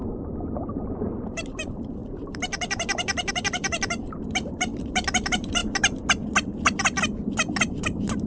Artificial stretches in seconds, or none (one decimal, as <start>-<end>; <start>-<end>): 0.7-5.6; 7.6-8.3